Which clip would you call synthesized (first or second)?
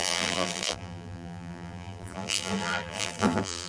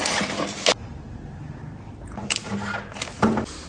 first